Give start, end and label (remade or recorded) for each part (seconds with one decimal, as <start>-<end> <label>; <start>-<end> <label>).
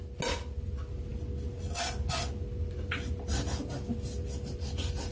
0.0-5.1 recorded